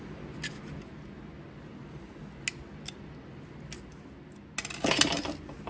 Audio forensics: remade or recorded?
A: recorded